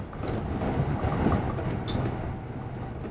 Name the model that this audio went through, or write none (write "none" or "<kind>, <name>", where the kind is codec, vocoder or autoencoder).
none